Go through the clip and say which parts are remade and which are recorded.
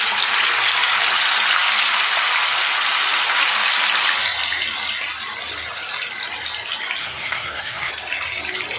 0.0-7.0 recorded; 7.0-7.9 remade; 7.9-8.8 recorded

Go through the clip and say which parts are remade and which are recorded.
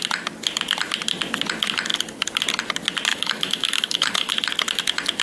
0.0-3.1 recorded; 3.1-4.3 remade; 4.3-5.2 recorded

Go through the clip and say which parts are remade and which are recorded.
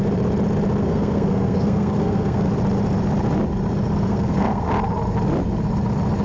0.0-0.8 recorded; 0.8-2.5 remade; 2.5-4.1 recorded; 4.1-4.7 remade; 4.7-6.2 recorded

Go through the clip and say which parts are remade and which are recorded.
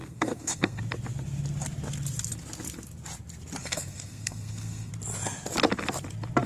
0.0-0.8 remade; 0.8-3.6 recorded; 3.6-4.9 remade; 4.9-6.5 recorded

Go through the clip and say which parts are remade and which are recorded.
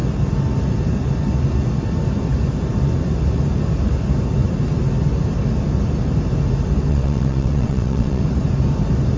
0.0-6.9 recorded; 6.9-8.2 remade; 8.2-9.2 recorded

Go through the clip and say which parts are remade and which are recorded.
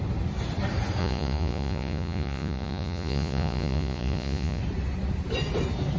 0.0-1.0 recorded; 1.0-4.6 remade; 4.6-6.0 recorded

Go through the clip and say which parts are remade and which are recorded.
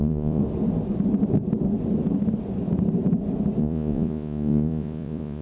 0.0-0.4 remade; 0.4-3.6 recorded; 3.6-5.4 remade